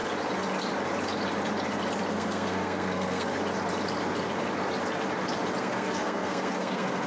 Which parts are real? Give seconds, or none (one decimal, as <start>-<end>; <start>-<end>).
0.0-2.1; 3.3-5.6